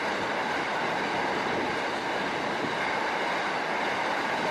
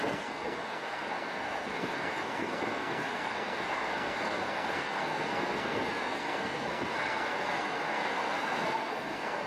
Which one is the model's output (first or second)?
second